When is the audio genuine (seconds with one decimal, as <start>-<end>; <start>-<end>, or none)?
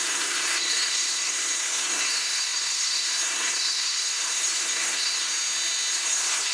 5.3-5.9